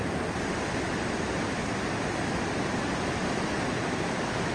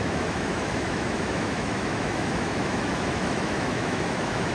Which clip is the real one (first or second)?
first